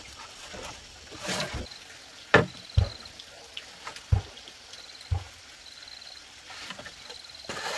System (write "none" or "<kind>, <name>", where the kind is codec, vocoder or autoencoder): none